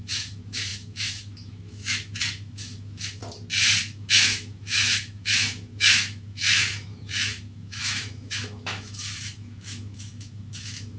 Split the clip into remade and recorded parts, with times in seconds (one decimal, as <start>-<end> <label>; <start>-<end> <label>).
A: 0.0-3.2 remade; 3.2-3.8 recorded; 3.8-11.0 remade